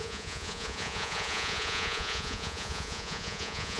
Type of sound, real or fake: fake